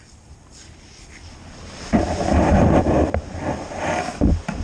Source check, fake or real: real